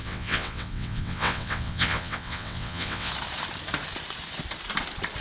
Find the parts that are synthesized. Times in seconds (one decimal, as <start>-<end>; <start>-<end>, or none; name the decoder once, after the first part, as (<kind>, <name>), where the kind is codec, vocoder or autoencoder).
0.0-3.1 (vocoder, WaveNeXt)